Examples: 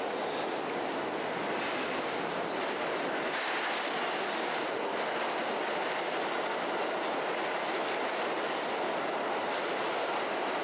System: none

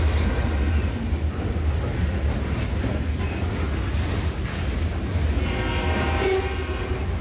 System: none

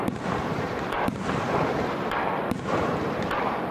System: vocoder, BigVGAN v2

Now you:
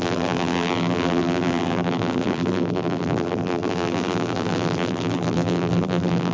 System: vocoder, BigVGAN v2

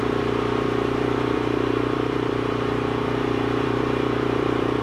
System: vocoder, BigVGAN v2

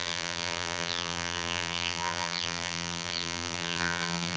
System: vocoder, BigVGAN v2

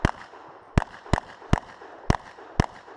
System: none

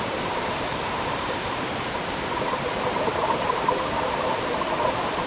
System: vocoder, BigVGAN v2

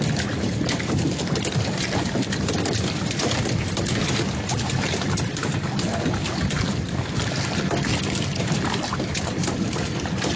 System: vocoder, BigVGAN v2